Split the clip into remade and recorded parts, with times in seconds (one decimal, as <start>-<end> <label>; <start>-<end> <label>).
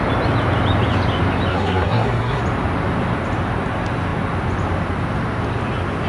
0.0-1.5 recorded; 1.5-2.4 remade; 2.4-6.1 recorded